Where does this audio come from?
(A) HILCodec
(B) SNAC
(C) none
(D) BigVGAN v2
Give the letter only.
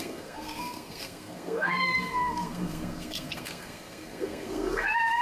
B